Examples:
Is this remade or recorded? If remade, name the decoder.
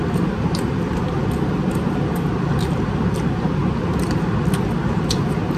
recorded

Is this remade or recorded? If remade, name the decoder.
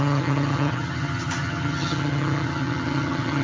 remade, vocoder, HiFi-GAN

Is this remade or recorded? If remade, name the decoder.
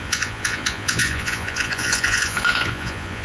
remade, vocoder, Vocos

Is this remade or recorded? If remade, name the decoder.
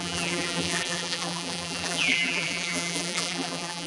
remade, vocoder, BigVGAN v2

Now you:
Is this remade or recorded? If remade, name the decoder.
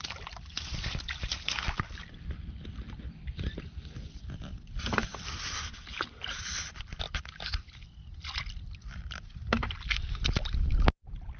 recorded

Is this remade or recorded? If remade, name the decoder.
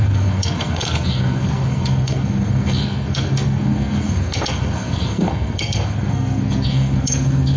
remade, codec, SNAC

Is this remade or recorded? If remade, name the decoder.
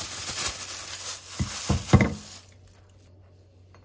recorded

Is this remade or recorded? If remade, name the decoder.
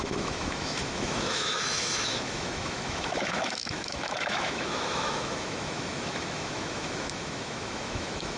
remade, autoencoder, DAC-VAE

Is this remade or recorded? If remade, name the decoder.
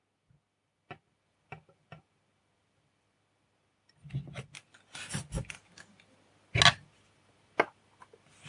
recorded